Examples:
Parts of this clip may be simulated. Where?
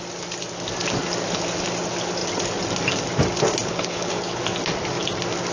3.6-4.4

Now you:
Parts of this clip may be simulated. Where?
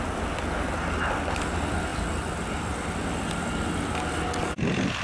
none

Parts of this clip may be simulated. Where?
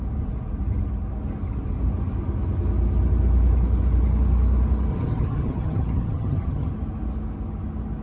4.9-6.7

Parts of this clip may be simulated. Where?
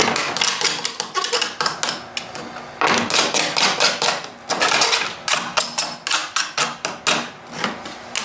none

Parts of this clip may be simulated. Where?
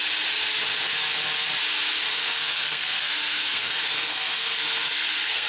2.1-5.5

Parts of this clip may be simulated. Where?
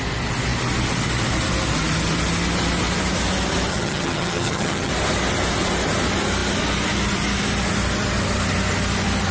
3.7-4.9